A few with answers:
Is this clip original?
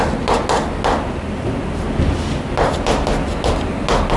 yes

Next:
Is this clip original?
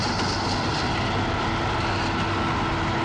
yes